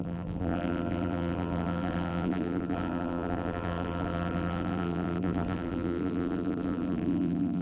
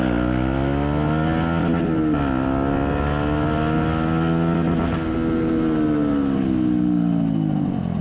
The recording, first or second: second